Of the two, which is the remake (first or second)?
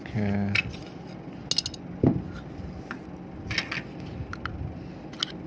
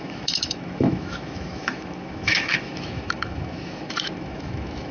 second